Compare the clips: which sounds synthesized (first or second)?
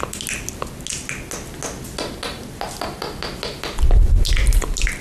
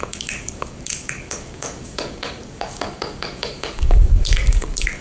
second